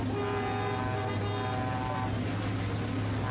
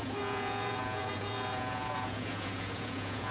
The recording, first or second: first